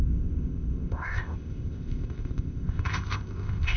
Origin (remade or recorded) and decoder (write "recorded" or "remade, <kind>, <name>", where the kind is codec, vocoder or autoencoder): remade, codec, ZipCodec